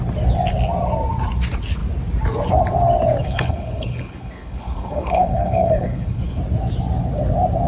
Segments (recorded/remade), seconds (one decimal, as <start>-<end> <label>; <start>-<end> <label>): 0.0-3.2 recorded; 3.2-6.4 remade; 6.4-7.7 recorded